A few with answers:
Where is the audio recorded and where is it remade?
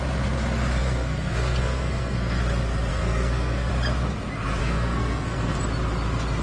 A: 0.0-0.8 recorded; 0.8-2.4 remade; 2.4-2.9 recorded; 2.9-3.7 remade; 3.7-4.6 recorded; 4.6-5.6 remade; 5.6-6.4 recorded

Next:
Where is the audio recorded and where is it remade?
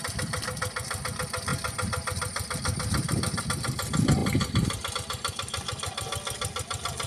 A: 0.0-7.1 recorded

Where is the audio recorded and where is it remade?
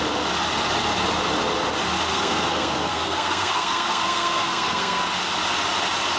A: 0.0-2.1 recorded; 2.1-5.0 remade; 5.0-6.2 recorded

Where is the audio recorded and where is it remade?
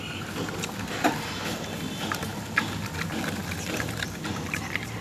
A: 0.0-2.3 remade; 2.3-3.1 recorded; 3.1-5.0 remade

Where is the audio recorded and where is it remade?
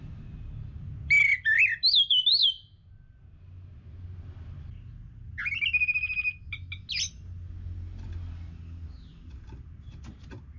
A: 0.0-10.6 recorded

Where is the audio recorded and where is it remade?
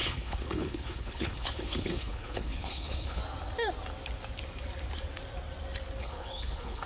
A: 0.0-3.2 remade; 3.2-6.0 recorded; 6.0-6.9 remade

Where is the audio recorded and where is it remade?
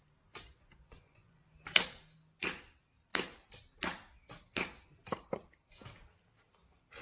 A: 0.0-0.5 recorded; 0.5-1.4 remade; 1.4-7.0 recorded